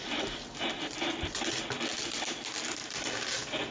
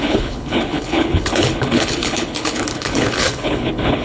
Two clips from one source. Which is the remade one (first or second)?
second